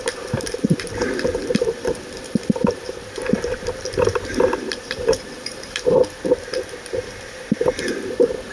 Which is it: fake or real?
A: fake